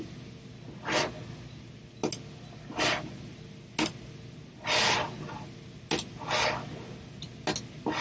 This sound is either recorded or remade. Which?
recorded